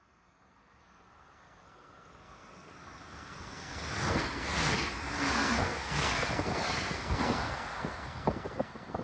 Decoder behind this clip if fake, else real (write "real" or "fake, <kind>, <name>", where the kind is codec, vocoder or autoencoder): fake, codec, SNAC